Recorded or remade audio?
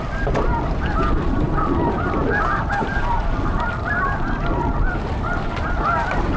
recorded